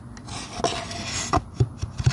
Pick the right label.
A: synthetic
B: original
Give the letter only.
B